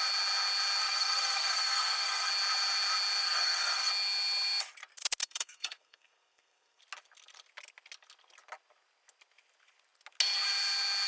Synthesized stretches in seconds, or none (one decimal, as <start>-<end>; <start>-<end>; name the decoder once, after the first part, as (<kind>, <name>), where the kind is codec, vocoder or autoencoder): 0.8-2.3 (codec, SNAC); 3.2-3.9; 5.2-6.8